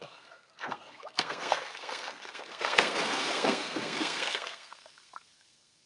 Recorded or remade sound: remade